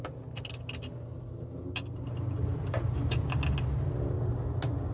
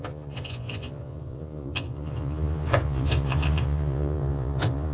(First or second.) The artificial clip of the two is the second